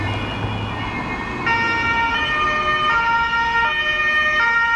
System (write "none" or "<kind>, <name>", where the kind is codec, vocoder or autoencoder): none